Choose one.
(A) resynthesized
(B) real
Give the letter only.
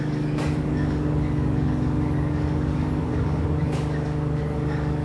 A